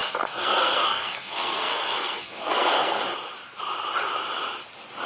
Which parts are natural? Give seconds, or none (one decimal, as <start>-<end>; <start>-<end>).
3.0-5.1